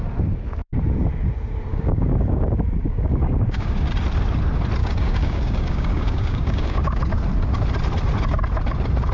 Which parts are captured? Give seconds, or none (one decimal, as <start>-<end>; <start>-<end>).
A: 0.0-1.7; 3.9-4.8; 7.0-9.1

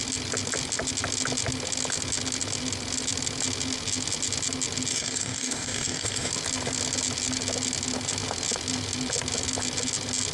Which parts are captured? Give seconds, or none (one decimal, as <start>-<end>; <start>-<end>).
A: 0.0-4.9; 6.3-10.3

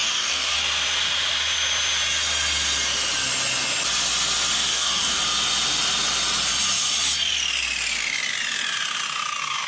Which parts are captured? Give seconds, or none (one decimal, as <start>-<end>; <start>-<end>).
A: 0.6-4.7; 5.2-9.7

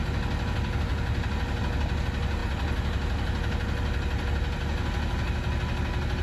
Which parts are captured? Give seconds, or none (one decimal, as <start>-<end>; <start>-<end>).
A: 0.0-6.2

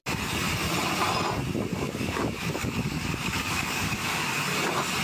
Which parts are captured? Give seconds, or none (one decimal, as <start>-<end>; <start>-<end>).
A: 0.0-1.7; 4.3-5.0